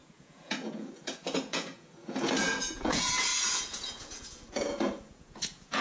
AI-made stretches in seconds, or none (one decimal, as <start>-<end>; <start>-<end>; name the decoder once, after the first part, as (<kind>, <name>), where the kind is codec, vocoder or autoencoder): 0.0-5.8 (vocoder, Vocos)